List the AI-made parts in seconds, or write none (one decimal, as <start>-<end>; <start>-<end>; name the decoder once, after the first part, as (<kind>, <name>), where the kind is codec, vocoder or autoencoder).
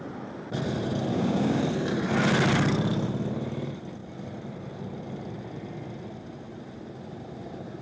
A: 1.1-1.6 (codec, DAC)